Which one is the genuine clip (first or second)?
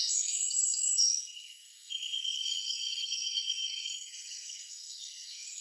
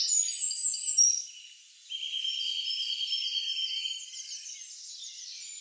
second